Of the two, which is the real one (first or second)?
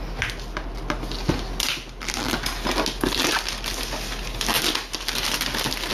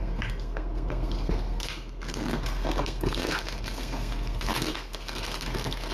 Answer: first